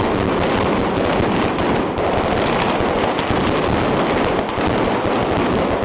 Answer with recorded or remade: recorded